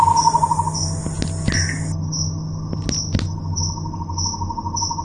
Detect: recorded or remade recorded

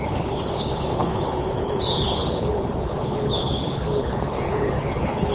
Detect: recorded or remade remade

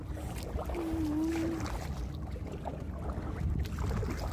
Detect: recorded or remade recorded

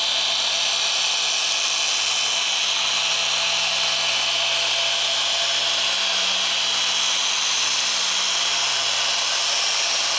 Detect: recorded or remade recorded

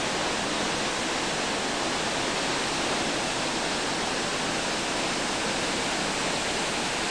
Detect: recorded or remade recorded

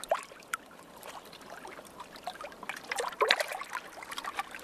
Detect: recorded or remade recorded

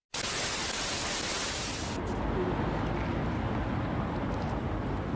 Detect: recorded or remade recorded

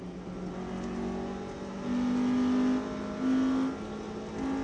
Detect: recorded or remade recorded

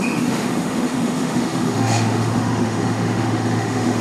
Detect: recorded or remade remade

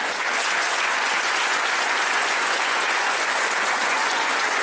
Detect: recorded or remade remade